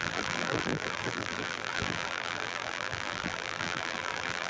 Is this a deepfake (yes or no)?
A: yes